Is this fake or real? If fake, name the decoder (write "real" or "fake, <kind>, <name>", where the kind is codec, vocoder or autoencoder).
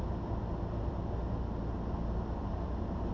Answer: real